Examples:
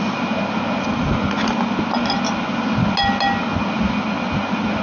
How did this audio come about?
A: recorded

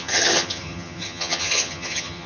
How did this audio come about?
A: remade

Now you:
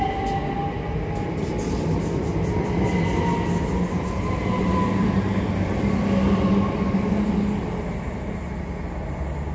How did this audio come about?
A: recorded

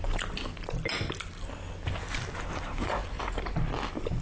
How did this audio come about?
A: recorded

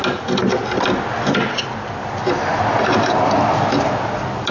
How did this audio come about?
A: recorded